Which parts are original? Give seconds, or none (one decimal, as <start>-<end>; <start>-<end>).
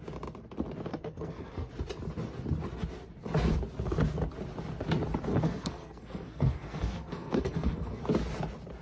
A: 0.0-0.9; 1.7-5.3; 8.0-8.8